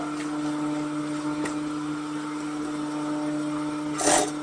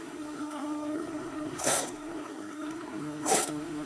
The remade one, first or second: second